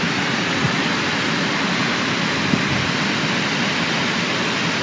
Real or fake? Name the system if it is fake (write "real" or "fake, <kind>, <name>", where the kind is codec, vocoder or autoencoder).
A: real